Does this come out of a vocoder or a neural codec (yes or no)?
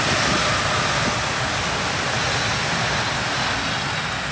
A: no